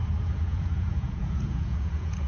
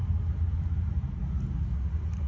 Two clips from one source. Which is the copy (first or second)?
first